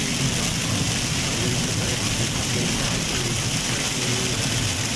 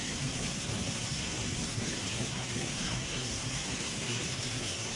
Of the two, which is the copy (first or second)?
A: second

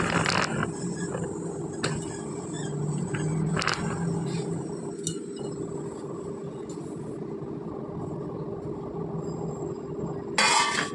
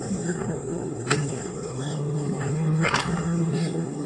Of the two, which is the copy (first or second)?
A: second